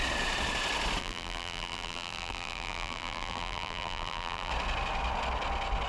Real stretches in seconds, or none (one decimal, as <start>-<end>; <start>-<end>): 0.0-1.0; 4.5-5.9

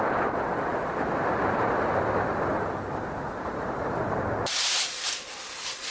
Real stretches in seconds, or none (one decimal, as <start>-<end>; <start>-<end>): 0.0-0.7; 4.2-5.9

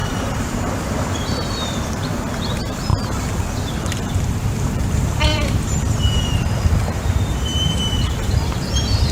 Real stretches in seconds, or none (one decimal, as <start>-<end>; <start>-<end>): 2.9-3.7

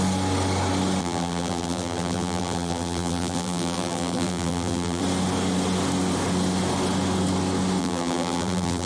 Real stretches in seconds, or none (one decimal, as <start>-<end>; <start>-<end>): 0.0-1.0; 5.0-7.8